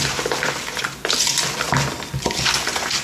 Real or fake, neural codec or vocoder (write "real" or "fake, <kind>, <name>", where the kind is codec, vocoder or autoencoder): real